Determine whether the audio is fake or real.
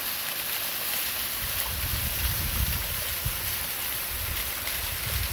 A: real